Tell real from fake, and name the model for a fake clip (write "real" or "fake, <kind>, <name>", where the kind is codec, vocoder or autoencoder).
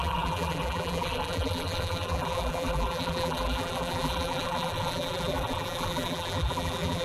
fake, vocoder, BigVGAN v2